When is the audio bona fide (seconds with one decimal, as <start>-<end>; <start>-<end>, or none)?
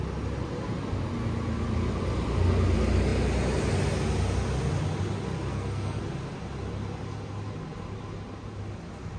0.0-5.5; 6.0-9.2